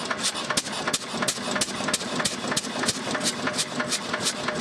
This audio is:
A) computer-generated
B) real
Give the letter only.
B